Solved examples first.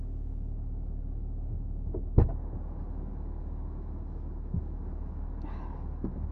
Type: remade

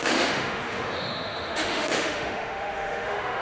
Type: remade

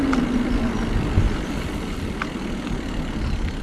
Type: recorded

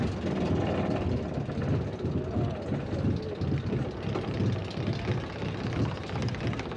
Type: recorded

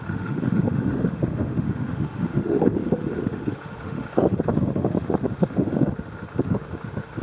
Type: remade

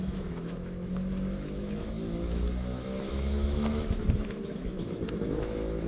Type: remade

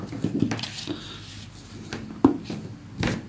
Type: recorded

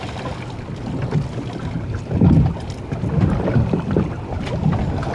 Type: recorded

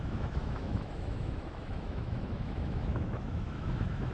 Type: remade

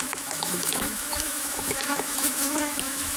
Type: remade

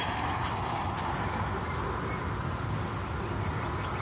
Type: recorded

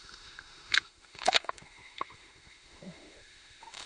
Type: remade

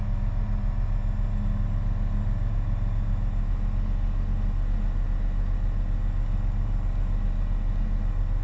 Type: recorded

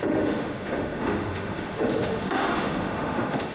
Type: remade